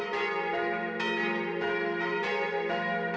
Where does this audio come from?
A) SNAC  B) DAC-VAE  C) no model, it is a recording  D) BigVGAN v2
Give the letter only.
C